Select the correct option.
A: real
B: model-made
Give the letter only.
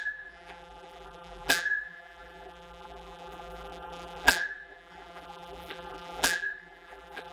B